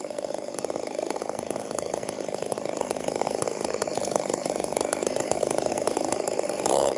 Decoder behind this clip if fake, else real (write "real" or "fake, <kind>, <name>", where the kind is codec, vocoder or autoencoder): fake, codec, SNAC